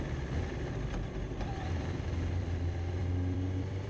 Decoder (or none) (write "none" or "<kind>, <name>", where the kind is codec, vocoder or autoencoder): vocoder, BigVGAN v2